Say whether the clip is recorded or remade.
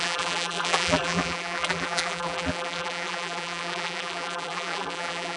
remade